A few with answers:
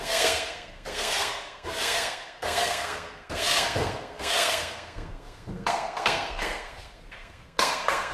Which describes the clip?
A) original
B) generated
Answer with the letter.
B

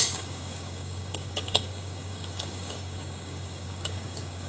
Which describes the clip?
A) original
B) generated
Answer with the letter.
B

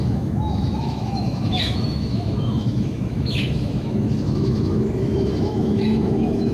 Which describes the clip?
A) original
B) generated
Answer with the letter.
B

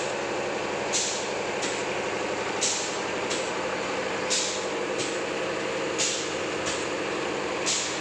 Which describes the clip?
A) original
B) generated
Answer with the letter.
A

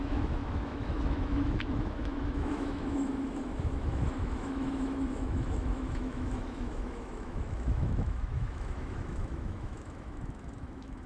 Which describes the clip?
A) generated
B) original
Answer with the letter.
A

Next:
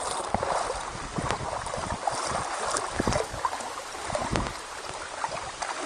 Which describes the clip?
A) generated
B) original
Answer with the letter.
B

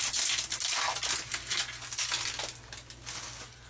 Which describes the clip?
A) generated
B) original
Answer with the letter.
B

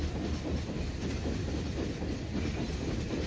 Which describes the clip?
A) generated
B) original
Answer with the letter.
B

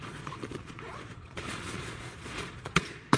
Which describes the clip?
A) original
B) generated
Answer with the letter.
B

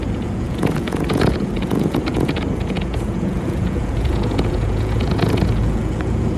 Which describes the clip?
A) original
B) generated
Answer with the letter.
B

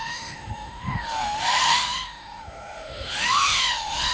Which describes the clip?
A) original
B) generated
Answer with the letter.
B